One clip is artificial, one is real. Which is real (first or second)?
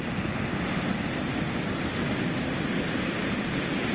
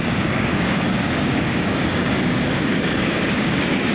first